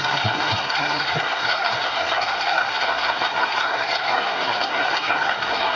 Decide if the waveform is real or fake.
fake